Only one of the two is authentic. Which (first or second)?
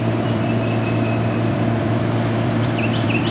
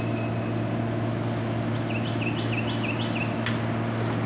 second